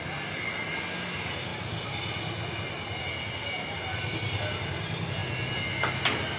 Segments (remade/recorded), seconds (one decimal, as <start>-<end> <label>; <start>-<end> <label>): 0.0-6.4 recorded